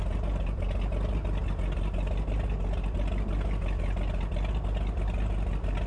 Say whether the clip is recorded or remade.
recorded